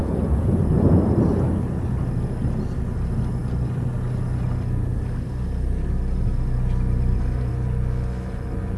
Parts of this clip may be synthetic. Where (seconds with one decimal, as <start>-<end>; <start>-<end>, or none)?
0.0-0.6